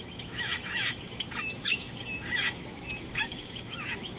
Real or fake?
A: fake